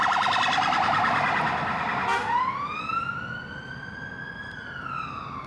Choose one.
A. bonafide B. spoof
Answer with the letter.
A